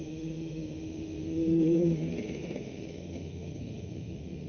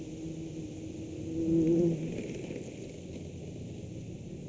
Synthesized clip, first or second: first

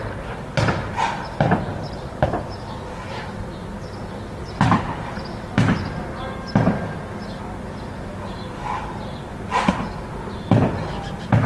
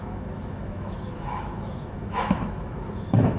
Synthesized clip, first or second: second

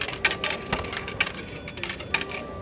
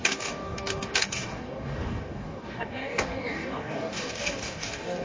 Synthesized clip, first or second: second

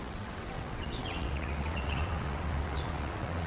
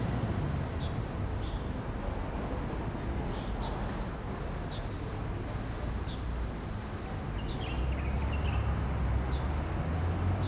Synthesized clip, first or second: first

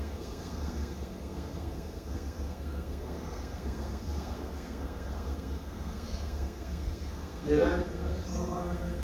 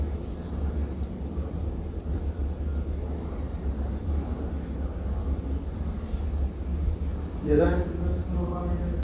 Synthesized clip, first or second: first